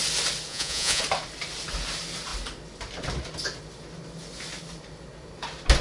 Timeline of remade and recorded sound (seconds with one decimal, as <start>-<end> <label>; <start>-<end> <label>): 0.0-0.5 recorded; 0.5-1.0 remade; 1.0-5.8 recorded